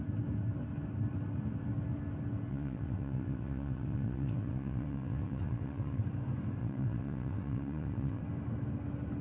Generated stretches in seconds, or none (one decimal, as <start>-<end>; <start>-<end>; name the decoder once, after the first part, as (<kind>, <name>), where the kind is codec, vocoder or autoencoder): 2.5-6.0 (vocoder, WaveNeXt); 6.6-8.2

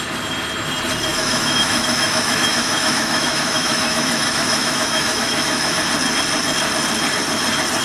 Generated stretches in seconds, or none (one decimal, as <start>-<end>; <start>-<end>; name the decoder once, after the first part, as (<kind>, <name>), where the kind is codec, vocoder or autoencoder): 1.1-5.8 (autoencoder, DAC-VAE)